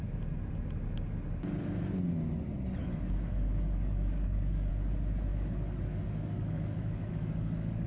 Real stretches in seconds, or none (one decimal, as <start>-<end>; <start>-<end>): 0.0-2.8; 4.7-5.3